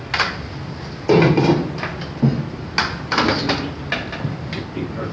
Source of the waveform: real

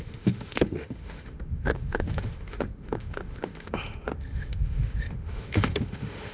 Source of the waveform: fake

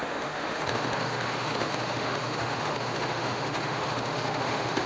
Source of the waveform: fake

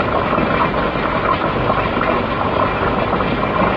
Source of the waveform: real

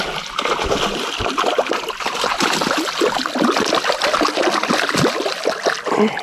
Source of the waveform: real